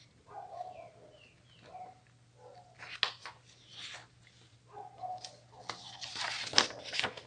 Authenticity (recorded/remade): recorded